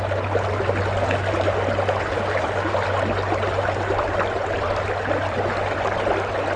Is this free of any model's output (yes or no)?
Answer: yes